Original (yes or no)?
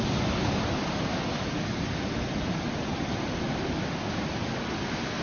yes